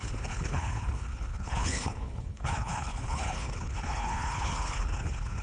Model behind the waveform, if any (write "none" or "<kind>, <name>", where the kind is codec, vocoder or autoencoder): codec, HILCodec